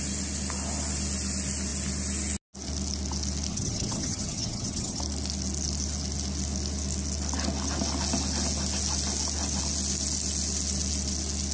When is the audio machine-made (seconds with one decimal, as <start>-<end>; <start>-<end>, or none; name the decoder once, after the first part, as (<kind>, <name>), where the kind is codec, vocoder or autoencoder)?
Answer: 3.5-5.0 (vocoder, HiFi-GAN)